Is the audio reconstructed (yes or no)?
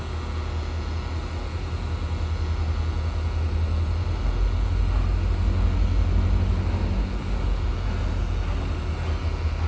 no